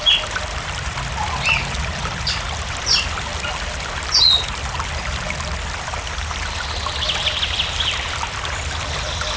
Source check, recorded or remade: recorded